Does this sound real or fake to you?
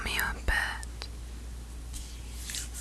real